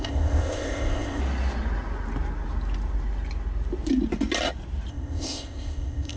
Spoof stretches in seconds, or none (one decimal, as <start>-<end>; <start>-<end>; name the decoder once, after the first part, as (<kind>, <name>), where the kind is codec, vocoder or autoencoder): 0.0-1.2 (codec, ZipCodec); 4.9-6.2